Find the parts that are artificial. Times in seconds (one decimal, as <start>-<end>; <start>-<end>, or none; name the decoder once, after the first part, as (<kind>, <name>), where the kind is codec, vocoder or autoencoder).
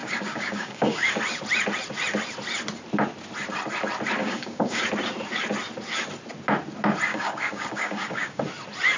0.0-1.1 (codec, DAC); 4.2-4.8; 7.1-8.4